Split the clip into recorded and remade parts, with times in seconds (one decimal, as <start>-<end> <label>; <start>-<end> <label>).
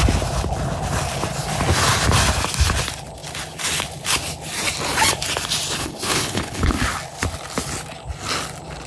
0.0-5.8 recorded; 5.8-6.7 remade; 6.7-8.9 recorded